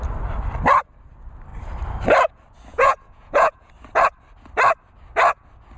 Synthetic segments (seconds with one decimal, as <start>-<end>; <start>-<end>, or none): 2.7-3.7